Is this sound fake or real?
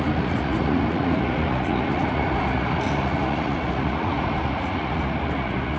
fake